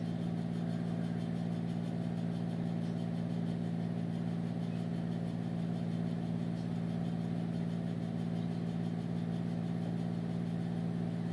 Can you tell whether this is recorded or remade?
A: recorded